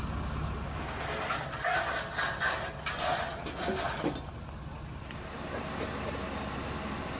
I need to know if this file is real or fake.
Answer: real